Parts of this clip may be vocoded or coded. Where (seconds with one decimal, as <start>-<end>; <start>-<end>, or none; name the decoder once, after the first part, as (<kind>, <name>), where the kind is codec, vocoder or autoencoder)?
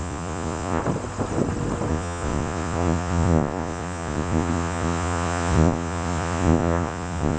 0.0-0.8 (vocoder, Vocos); 1.9-7.4